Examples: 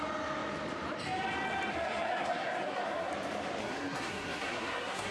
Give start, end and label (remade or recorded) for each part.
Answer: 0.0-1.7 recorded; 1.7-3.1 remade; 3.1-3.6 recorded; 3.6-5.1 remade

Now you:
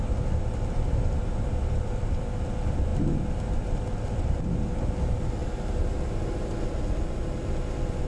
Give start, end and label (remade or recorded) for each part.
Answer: 0.0-8.1 recorded

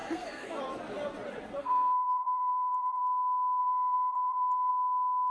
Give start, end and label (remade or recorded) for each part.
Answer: 0.0-0.6 remade; 0.6-1.6 recorded; 1.6-3.0 remade; 3.0-3.6 recorded; 3.6-4.7 remade; 4.7-5.3 recorded

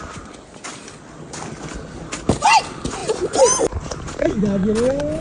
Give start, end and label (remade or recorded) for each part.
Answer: 0.0-5.2 recorded

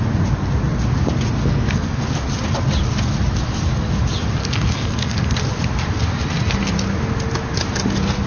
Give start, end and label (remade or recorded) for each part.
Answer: 0.0-1.4 recorded; 1.4-2.0 remade; 2.0-4.4 recorded; 4.4-5.4 remade; 5.4-8.3 recorded

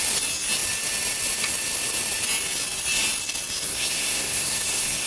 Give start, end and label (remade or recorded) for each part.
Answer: 0.0-3.7 recorded; 3.7-5.1 remade

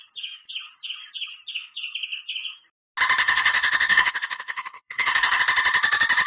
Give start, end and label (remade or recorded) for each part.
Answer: 0.0-3.2 recorded; 3.2-5.4 remade; 5.4-6.3 recorded